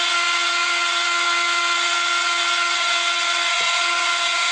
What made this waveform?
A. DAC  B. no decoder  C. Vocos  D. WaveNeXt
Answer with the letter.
D